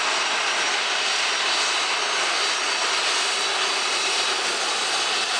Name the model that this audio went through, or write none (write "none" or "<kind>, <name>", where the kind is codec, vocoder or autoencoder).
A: none